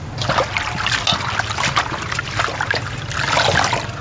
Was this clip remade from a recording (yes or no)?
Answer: no